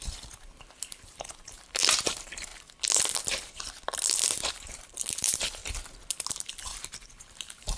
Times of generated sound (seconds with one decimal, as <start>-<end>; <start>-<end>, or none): 0.0-2.5; 4.5-5.6; 7.0-7.8